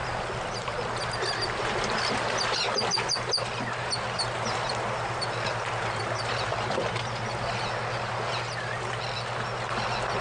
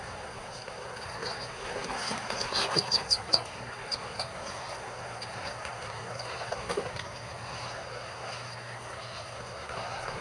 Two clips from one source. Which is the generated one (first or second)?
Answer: second